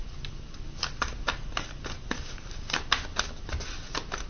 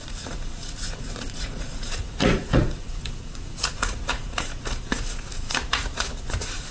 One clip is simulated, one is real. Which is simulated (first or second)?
second